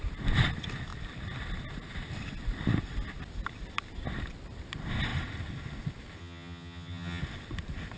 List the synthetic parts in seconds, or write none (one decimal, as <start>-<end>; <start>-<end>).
6.2-7.2